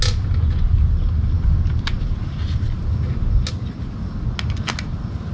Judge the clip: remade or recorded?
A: recorded